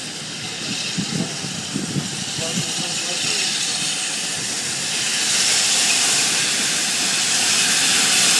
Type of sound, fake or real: real